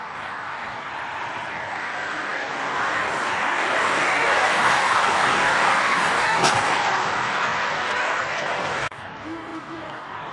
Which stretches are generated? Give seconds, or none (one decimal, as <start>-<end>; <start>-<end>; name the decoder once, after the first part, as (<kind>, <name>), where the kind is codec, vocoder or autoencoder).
0.0-0.9 (codec, DAC); 1.5-10.3